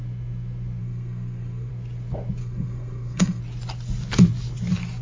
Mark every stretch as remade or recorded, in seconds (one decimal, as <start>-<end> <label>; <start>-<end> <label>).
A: 0.0-0.8 recorded; 0.8-1.7 remade; 1.7-2.4 recorded; 2.4-3.4 remade; 3.4-5.0 recorded